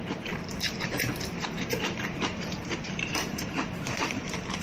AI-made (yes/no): yes